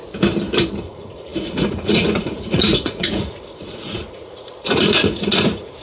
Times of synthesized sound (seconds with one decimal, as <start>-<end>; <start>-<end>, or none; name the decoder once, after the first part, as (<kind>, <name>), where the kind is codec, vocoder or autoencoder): 0.8-5.8 (vocoder, Vocos)